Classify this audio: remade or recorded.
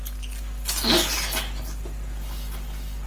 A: recorded